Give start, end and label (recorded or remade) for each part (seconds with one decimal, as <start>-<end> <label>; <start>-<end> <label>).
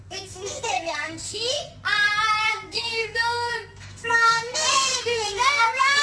0.0-1.6 remade; 1.6-2.5 recorded; 2.5-6.0 remade